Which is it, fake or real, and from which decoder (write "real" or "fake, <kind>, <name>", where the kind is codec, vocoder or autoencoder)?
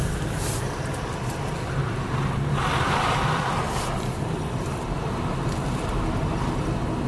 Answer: real